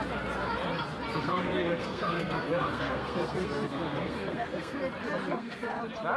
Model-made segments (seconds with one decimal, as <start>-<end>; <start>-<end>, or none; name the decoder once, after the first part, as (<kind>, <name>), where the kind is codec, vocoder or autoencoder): 1.1-4.8 (codec, SNAC); 5.3-5.8